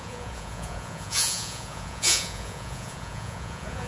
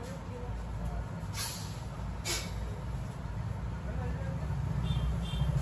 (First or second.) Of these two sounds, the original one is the second